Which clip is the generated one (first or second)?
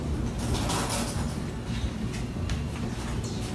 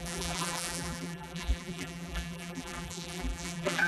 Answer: second